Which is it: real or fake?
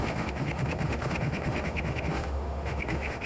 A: fake